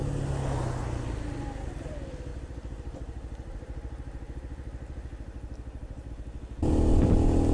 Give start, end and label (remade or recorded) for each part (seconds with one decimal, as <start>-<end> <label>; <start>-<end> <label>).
0.0-2.3 recorded; 2.3-6.1 remade; 6.1-7.5 recorded